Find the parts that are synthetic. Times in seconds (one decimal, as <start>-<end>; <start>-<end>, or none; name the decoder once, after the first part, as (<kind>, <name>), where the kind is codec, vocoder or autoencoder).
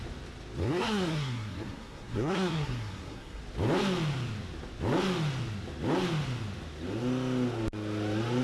0.6-3.4 (codec, SNAC)